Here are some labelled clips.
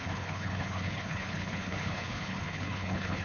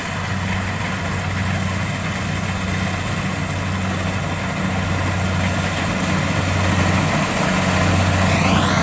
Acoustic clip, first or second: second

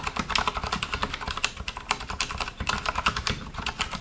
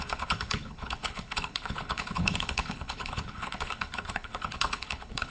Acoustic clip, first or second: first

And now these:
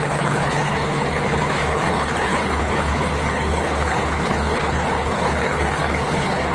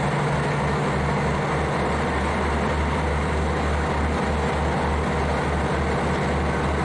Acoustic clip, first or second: second